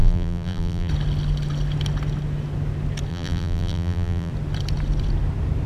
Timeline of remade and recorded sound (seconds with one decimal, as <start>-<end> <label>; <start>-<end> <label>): 0.0-0.9 remade; 0.9-3.1 recorded; 3.1-4.3 remade; 4.3-5.7 recorded